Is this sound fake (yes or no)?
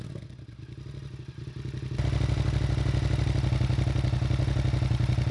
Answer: no